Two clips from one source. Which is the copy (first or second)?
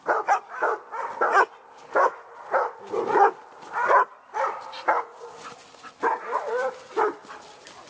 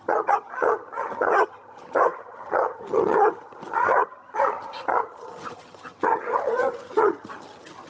second